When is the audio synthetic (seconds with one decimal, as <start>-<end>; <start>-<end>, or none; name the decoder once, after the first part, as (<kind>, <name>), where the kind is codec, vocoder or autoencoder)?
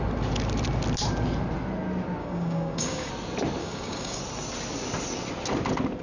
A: 2.2-3.1 (codec, DAC); 3.6-4.2